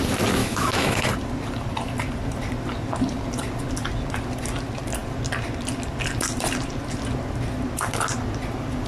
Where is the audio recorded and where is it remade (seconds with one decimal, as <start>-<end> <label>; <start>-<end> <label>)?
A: 0.0-0.4 recorded; 0.4-1.0 remade; 1.0-8.9 recorded